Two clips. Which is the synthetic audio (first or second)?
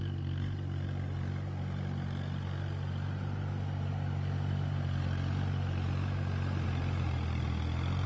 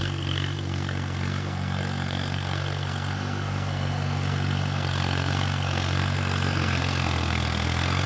second